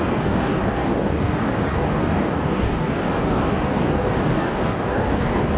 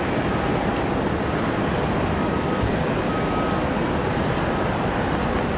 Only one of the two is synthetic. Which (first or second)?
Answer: first